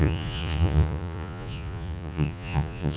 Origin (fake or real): fake